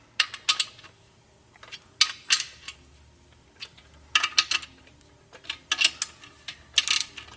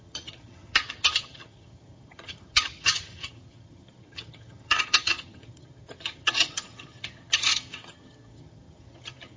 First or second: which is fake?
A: second